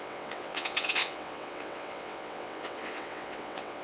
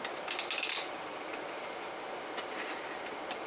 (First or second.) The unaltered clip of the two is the second